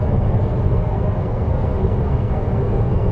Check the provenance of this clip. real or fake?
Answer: fake